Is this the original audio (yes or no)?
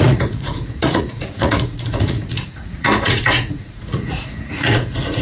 no